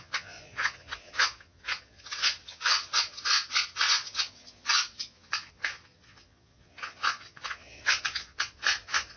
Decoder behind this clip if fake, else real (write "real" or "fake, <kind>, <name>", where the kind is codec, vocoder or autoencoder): fake, vocoder, Vocos